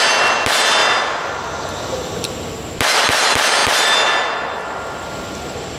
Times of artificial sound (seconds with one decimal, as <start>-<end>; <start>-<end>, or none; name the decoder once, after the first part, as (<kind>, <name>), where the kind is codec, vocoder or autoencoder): none